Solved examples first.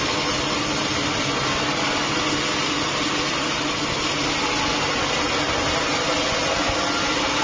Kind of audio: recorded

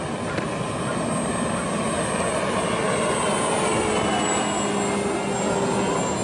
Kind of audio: recorded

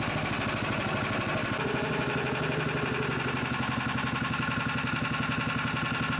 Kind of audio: recorded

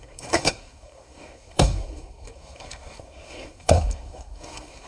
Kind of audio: remade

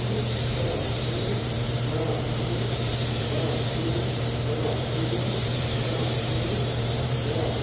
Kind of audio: remade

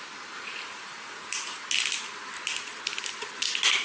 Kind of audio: recorded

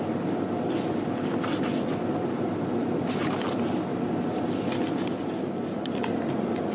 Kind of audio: recorded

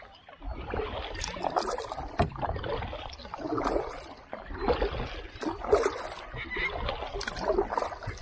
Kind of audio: recorded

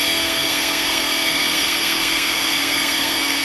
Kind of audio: remade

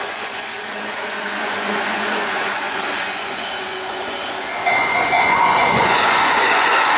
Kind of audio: remade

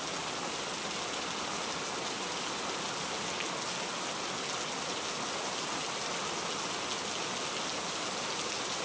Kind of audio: recorded